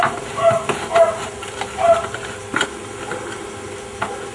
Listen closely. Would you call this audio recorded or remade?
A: recorded